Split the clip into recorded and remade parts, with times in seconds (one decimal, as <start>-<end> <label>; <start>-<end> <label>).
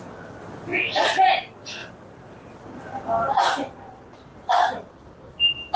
0.0-1.8 recorded; 1.8-3.4 remade; 3.4-4.3 recorded; 4.3-5.8 remade